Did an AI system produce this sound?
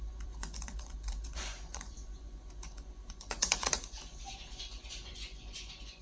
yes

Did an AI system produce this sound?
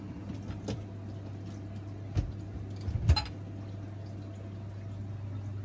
no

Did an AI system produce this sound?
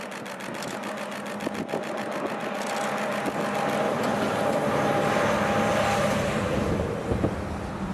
no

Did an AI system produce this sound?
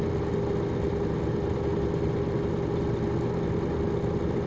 no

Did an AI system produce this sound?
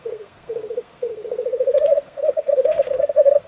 yes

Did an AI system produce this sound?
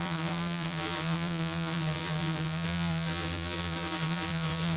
yes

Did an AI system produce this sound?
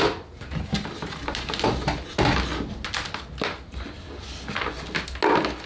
no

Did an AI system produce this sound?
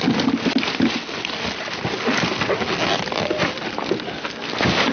no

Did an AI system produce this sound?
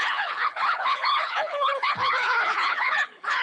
yes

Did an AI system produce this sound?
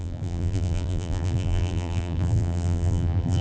yes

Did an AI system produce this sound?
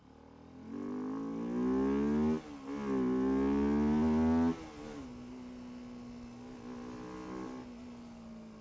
no